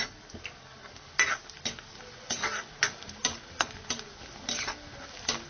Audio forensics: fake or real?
real